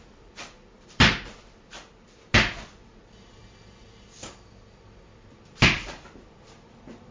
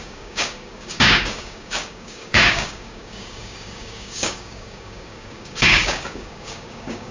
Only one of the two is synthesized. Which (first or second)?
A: second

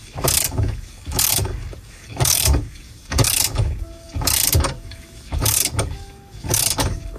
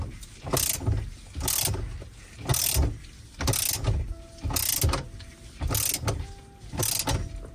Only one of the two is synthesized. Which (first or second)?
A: first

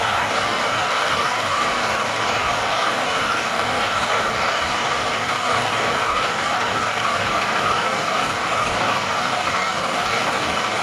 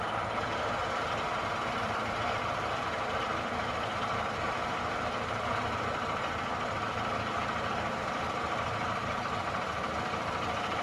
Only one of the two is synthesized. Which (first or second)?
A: first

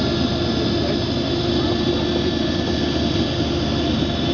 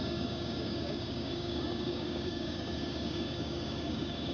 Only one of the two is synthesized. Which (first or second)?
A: second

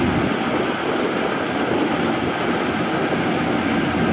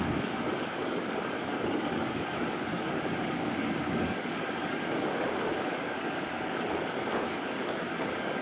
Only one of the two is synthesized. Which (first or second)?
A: second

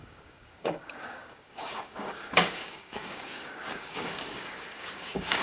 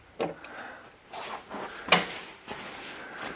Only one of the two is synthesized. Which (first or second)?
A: first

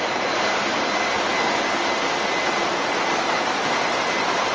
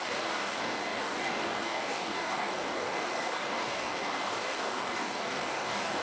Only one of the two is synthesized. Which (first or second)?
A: second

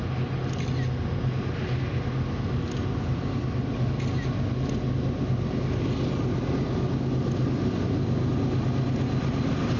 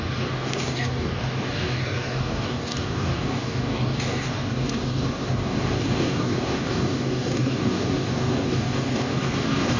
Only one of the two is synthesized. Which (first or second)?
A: second